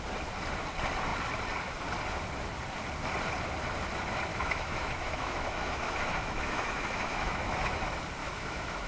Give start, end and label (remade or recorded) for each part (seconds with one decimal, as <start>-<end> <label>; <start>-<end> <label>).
0.0-4.3 recorded; 4.3-7.8 remade; 7.8-8.2 recorded; 8.2-8.9 remade